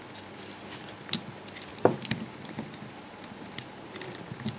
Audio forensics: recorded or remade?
recorded